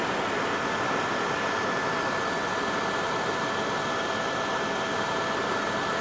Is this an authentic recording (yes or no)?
yes